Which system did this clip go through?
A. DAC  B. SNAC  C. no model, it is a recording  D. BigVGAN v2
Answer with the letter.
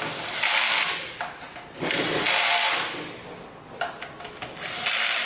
C